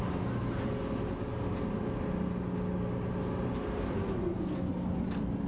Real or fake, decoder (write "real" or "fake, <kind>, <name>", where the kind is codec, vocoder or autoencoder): real